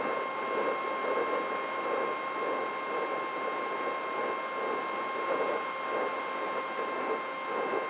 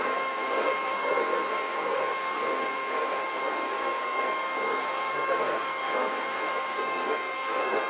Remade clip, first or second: second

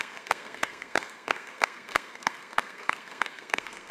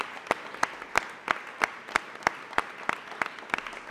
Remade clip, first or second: first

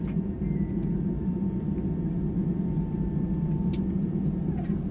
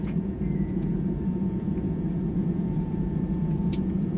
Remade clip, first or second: second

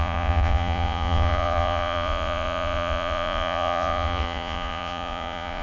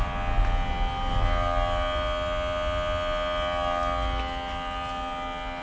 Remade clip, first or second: first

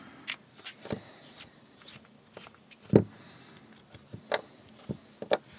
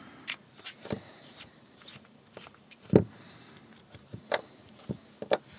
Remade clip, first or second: second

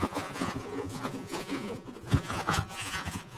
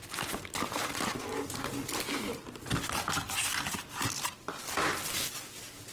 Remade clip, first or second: first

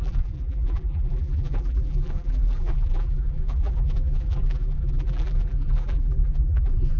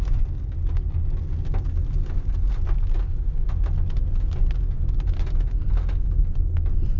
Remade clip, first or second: first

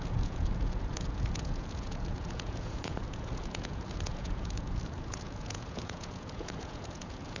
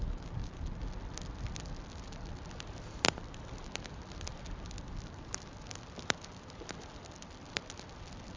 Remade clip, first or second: first